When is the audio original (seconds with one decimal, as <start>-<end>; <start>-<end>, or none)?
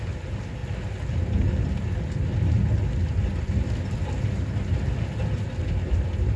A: 0.0-6.4